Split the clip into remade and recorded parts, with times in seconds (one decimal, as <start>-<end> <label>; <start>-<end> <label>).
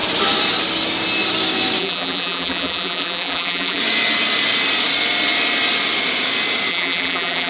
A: 0.0-1.8 recorded; 1.8-3.8 remade; 3.8-6.7 recorded; 6.7-7.5 remade